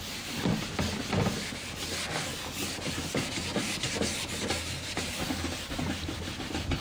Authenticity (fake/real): real